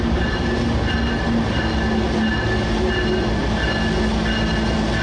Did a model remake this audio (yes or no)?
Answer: no